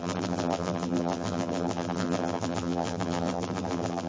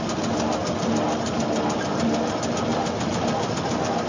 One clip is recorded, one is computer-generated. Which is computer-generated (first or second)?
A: first